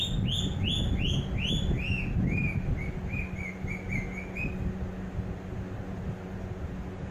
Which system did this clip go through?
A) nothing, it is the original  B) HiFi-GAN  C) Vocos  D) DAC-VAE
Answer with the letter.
A